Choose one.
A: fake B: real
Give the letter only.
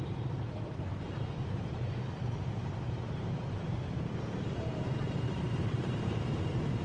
A